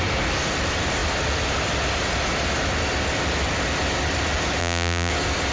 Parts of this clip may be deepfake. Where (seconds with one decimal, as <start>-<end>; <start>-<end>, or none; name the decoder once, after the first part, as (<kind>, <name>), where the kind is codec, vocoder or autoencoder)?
4.6-5.1 (vocoder, BigVGAN v2)